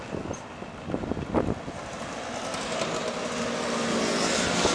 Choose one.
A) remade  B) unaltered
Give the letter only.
B